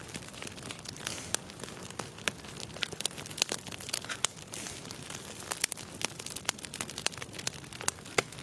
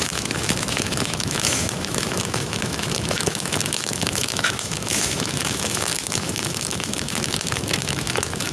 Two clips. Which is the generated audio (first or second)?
second